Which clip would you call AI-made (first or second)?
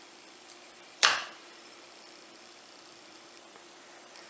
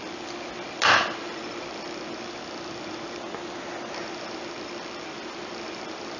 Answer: first